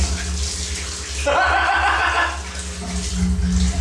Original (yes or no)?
yes